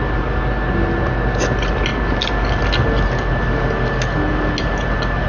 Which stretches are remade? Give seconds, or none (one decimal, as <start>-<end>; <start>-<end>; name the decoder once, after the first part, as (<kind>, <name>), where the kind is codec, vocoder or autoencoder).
none